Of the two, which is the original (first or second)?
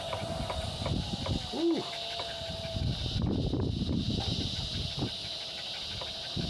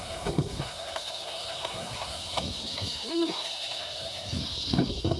first